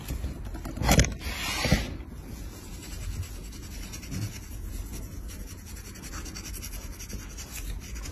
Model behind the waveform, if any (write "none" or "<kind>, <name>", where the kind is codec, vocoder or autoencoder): none